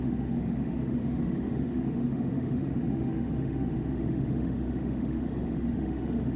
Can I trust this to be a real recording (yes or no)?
no